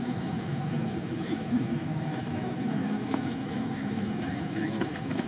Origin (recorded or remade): remade